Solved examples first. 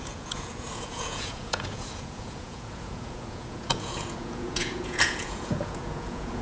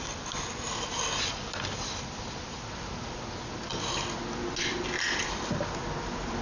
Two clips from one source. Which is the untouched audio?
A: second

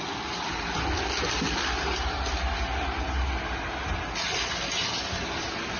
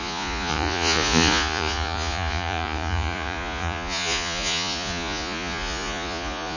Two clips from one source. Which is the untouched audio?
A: first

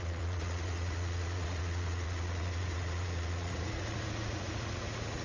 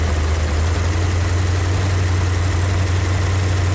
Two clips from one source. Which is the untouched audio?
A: second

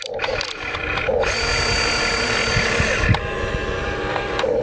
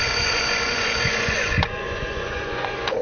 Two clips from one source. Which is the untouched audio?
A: first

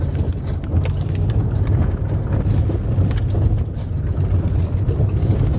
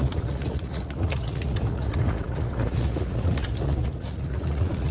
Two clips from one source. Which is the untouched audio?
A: first